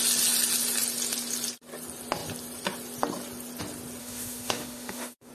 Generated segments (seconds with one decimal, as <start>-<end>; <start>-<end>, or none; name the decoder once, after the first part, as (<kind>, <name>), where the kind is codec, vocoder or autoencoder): 4.0-5.3 (autoencoder, DAC-VAE)